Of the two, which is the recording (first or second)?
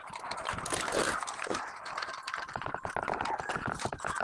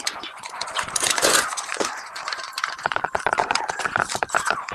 first